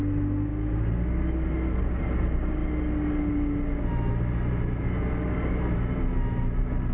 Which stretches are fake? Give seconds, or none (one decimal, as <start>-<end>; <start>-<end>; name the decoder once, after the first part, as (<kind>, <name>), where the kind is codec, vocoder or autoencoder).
none